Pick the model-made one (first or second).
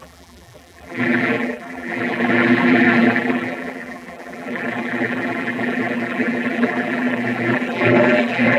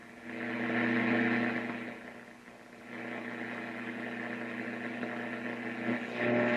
first